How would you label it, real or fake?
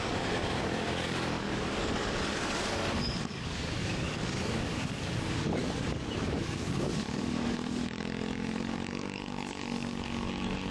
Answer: fake